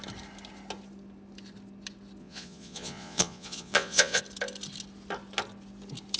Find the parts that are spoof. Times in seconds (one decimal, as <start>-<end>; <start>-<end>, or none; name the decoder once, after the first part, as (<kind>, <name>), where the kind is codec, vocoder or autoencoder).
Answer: 2.2-4.2 (vocoder, Vocos)

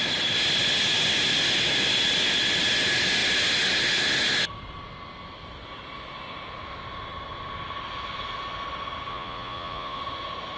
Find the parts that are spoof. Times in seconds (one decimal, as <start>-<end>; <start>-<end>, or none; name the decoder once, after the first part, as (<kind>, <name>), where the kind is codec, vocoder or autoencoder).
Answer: 9.1-10.0 (vocoder, Vocos)